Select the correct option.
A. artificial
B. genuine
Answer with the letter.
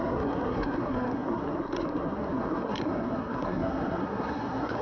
A